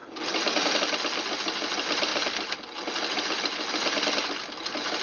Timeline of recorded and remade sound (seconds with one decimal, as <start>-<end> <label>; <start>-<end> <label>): 0.0-5.0 recorded